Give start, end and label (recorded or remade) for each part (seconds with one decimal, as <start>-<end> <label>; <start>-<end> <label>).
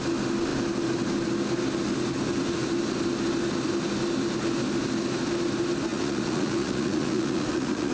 0.0-5.9 recorded; 5.9-7.9 remade